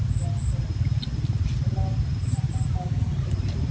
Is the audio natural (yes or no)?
yes